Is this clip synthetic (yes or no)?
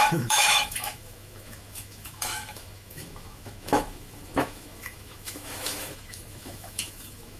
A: yes